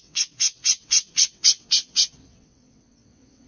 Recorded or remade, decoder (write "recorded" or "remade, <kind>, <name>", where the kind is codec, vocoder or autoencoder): remade, vocoder, WaveNeXt